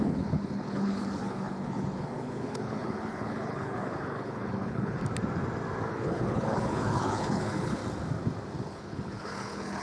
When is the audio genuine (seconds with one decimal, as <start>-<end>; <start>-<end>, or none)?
5.0-5.9; 7.8-8.7